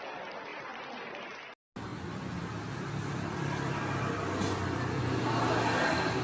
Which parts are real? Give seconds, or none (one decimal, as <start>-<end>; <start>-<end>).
0.0-1.9; 5.0-6.2